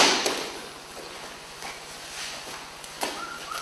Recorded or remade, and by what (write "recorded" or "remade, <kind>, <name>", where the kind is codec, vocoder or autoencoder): remade, vocoder, Vocos